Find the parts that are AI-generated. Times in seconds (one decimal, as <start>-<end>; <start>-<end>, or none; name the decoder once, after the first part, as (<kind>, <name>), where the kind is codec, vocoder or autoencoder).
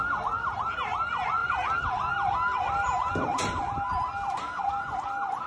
none